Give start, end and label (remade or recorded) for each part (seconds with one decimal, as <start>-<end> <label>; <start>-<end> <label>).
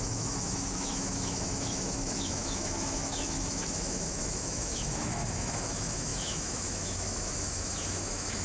0.0-8.4 remade